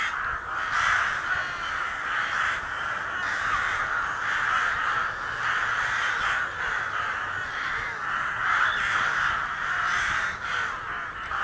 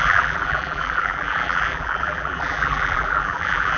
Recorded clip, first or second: first